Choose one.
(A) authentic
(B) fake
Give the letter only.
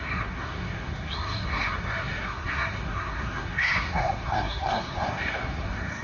B